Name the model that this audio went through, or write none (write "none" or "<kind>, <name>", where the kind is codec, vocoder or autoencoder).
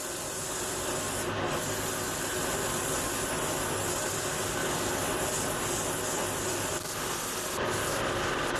none